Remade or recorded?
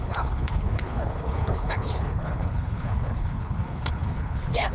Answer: remade